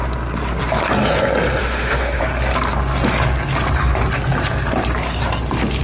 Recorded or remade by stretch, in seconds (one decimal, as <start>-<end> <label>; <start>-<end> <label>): 0.0-1.6 recorded; 1.6-2.2 remade; 2.2-5.8 recorded